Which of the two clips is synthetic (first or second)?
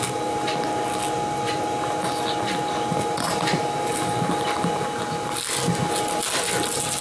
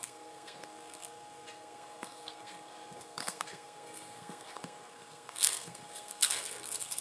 second